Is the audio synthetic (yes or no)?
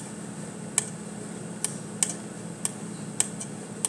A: no